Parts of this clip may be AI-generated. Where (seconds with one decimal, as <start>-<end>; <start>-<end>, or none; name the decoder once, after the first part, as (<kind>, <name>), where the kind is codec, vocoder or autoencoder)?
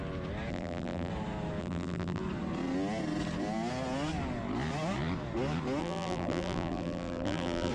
0.5-1.1 (vocoder, BigVGAN v2); 1.6-2.2; 5.8-7.7